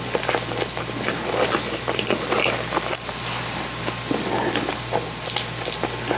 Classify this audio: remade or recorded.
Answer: recorded